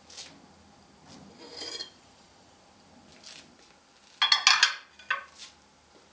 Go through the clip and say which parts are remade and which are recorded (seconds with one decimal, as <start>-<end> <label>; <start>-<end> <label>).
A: 0.0-1.8 recorded; 1.8-2.6 remade; 2.6-6.1 recorded